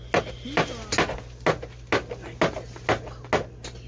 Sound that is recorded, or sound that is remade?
recorded